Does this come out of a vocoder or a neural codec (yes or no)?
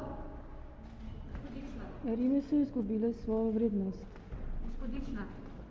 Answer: no